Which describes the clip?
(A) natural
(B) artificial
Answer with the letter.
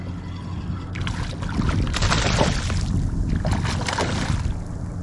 A